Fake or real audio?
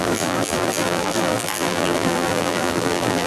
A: fake